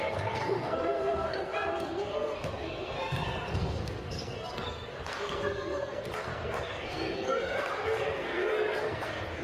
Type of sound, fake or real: fake